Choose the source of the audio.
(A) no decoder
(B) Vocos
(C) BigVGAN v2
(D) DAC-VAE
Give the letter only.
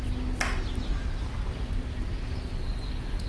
A